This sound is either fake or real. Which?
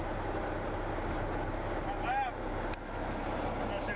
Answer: real